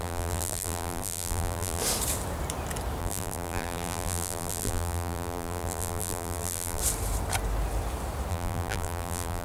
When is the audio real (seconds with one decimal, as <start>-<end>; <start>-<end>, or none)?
1.8-3.0; 6.8-8.3